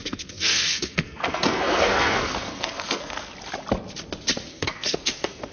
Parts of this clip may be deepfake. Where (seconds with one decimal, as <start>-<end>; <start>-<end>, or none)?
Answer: 0.0-3.3; 4.5-5.5